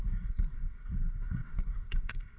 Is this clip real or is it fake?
fake